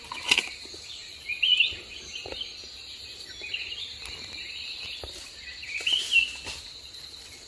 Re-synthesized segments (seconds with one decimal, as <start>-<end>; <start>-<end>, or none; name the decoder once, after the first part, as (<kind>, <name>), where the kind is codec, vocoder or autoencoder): none